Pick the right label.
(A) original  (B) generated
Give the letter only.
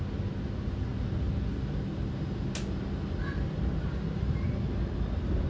A